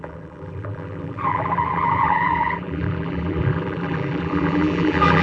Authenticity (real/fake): fake